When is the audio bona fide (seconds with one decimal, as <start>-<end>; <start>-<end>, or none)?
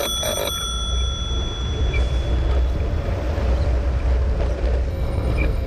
0.0-4.9